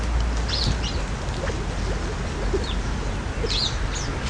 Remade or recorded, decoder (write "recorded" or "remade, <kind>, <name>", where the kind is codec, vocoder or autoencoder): recorded